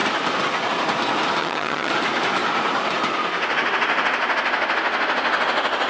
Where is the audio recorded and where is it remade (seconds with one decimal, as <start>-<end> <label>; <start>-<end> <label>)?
0.0-1.4 recorded; 1.4-1.9 remade; 1.9-5.9 recorded